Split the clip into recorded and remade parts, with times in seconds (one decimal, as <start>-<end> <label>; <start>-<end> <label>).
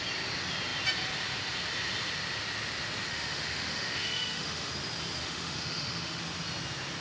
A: 0.0-3.1 recorded; 3.1-4.7 remade; 4.7-5.2 recorded; 5.2-6.2 remade; 6.2-7.0 recorded